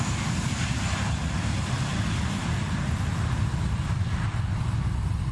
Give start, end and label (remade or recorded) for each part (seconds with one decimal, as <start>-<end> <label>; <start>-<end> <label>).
0.0-1.9 recorded; 1.9-5.3 remade